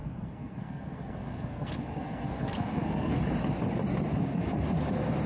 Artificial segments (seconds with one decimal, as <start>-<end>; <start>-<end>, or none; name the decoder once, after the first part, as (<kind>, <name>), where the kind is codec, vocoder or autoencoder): 0.0-3.2 (codec, SNAC); 4.1-4.6